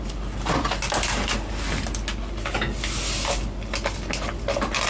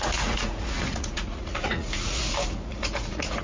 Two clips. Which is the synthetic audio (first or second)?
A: second